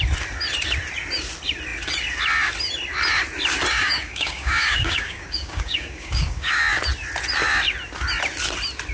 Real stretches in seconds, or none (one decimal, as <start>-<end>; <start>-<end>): 0.0-3.7; 6.6-8.9